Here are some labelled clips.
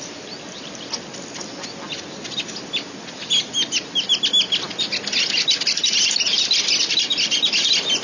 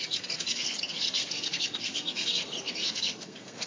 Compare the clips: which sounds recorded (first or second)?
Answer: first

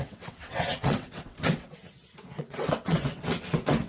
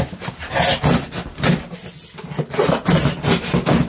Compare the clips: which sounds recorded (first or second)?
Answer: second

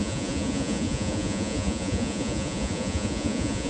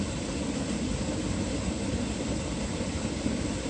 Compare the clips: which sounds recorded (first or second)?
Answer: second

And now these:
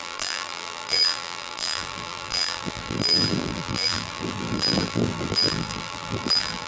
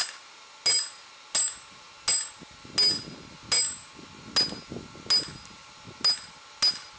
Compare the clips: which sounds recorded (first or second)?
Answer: second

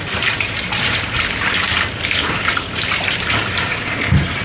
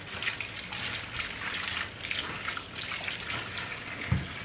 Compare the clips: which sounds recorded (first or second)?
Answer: second